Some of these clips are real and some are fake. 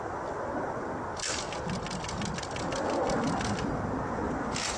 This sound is real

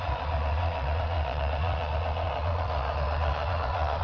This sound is fake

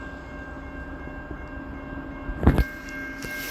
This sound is real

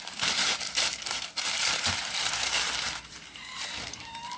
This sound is fake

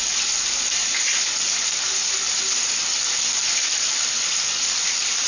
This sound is real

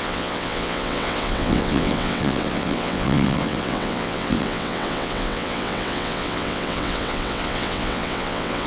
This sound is fake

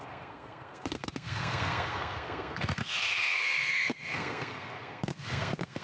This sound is fake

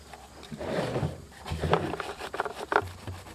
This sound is real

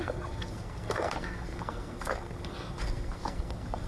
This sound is fake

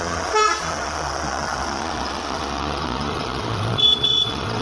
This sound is fake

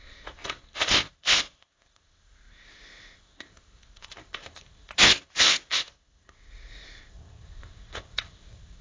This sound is fake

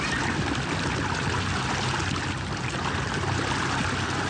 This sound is real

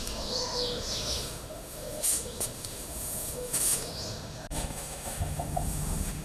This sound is fake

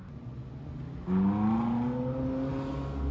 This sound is real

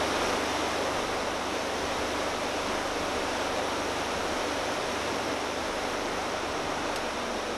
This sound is fake